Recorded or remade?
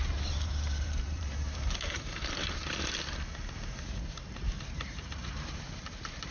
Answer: remade